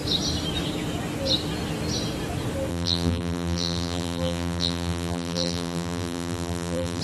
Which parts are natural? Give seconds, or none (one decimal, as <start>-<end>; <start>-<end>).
0.0-2.7